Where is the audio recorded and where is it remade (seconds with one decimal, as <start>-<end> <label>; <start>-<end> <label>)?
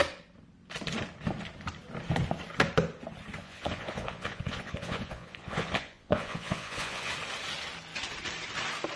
0.0-3.4 recorded; 3.4-7.1 remade; 7.1-9.0 recorded